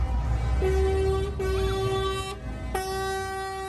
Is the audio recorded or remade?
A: recorded